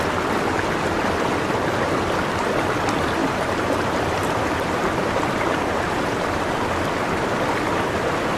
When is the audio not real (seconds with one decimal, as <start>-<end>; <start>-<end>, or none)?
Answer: 3.2-6.4